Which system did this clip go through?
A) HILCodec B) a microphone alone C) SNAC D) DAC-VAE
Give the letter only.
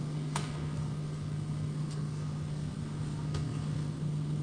C